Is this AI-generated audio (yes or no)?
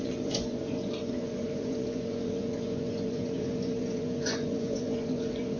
yes